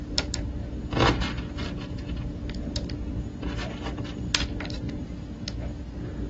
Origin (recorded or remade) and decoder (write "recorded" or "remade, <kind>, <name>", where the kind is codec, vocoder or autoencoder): recorded